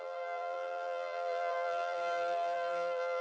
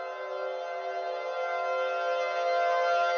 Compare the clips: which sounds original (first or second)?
second